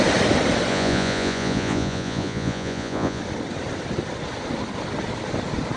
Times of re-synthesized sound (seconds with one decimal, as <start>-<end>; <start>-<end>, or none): 0.7-3.2